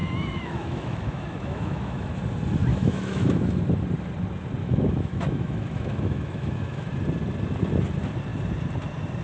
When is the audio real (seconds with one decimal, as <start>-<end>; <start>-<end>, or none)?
2.2-2.7; 3.6-4.6; 6.9-9.2